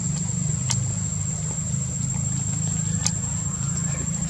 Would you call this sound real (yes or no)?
yes